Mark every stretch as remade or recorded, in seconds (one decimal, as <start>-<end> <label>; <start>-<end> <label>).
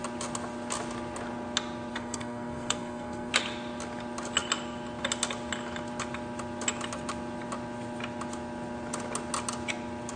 0.0-1.9 recorded; 1.9-3.3 remade; 3.3-10.2 recorded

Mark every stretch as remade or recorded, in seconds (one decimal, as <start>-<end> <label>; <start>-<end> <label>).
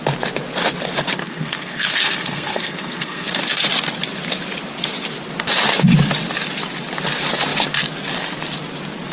0.0-1.2 recorded; 1.2-3.3 remade; 3.3-9.1 recorded